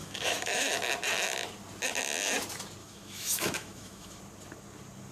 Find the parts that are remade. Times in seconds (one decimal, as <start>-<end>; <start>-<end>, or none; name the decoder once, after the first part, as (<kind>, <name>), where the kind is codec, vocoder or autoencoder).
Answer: 0.0-0.9 (autoencoder, DAC-VAE); 2.8-4.2

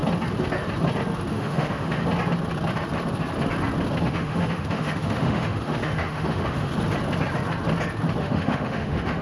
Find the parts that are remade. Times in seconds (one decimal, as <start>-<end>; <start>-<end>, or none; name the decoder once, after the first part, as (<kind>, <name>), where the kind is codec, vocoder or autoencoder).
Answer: 1.3-2.0 (autoencoder, DAC-VAE); 4.0-6.7; 8.2-9.2